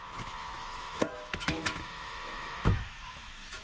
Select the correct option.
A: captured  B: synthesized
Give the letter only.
B